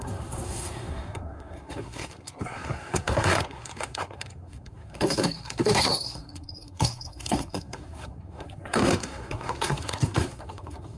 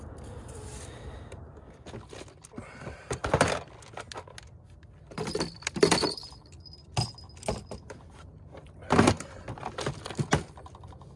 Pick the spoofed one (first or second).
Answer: first